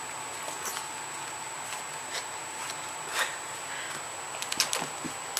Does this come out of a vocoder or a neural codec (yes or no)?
no